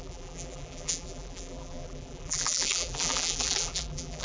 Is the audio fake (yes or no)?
yes